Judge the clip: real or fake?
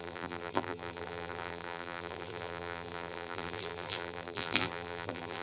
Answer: fake